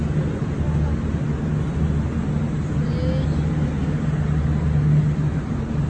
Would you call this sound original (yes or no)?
yes